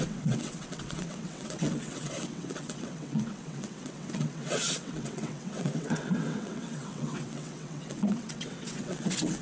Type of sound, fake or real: fake